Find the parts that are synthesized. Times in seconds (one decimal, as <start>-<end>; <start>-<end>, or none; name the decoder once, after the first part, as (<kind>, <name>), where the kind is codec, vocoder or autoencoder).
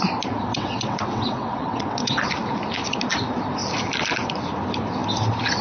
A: 0.5-2.2 (vocoder, WaveNeXt)